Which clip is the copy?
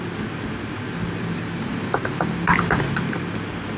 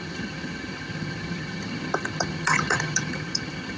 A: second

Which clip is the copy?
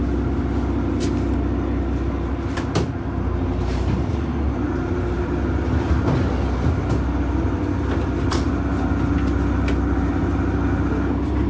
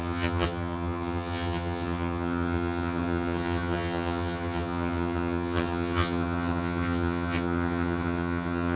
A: second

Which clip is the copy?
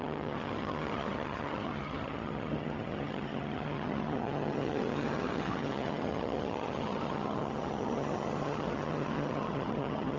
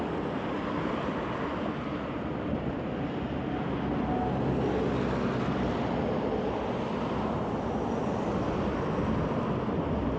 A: first